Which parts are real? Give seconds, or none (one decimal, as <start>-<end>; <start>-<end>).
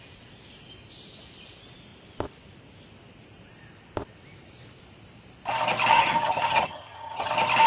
0.0-5.9; 7.3-7.7